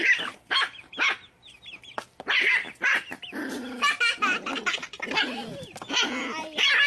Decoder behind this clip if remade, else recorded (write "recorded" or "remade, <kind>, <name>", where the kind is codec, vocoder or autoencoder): recorded